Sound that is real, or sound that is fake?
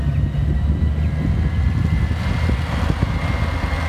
real